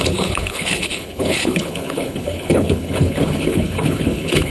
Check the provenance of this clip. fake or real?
fake